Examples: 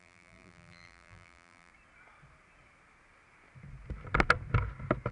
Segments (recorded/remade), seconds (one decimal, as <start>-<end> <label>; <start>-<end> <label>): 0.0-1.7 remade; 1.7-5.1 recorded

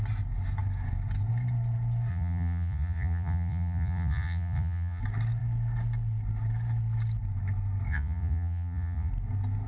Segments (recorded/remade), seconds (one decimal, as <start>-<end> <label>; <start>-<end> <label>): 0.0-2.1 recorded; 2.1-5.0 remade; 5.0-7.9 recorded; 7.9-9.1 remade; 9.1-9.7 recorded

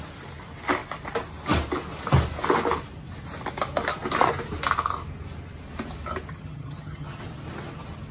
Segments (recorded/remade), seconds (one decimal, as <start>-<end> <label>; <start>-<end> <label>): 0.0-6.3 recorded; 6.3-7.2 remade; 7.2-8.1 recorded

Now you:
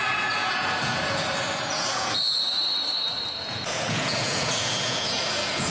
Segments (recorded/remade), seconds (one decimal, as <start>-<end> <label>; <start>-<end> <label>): 0.0-2.6 remade; 2.6-3.4 recorded; 3.4-5.7 remade

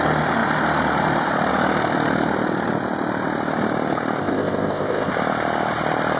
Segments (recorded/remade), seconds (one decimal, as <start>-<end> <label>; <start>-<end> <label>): 0.0-4.2 recorded; 4.2-5.1 remade; 5.1-6.2 recorded

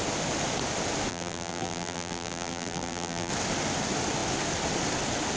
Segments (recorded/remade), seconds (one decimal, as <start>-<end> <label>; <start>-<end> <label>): 0.0-1.1 recorded; 1.1-3.3 remade; 3.3-5.4 recorded

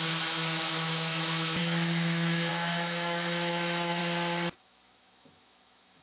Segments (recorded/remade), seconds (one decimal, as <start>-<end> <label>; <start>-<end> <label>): 0.0-4.0 remade; 4.0-4.5 recorded; 4.5-6.0 remade

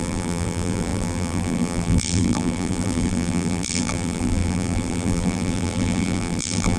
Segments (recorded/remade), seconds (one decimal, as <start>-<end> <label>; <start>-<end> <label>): 0.0-6.8 remade